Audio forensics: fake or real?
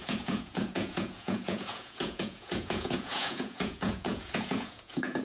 fake